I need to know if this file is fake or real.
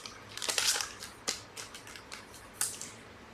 real